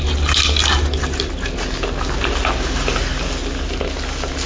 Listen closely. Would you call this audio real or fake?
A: real